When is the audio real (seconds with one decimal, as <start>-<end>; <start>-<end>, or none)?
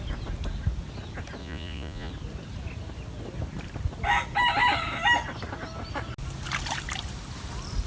0.0-1.4; 2.1-7.9